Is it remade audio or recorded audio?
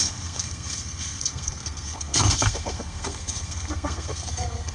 remade